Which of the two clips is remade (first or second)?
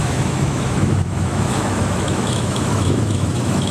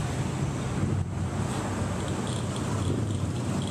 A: first